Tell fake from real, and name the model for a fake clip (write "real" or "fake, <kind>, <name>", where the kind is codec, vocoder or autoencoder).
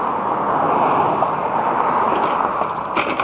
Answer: real